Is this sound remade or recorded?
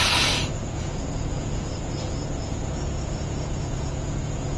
remade